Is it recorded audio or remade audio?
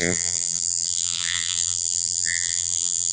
remade